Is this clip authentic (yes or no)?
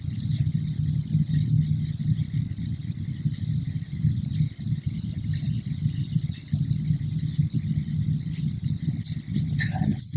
yes